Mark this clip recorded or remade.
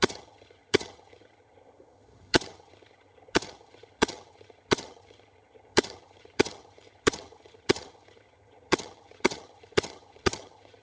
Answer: remade